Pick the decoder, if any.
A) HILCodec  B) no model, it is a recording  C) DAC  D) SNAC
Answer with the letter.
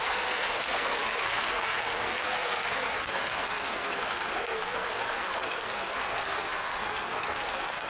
D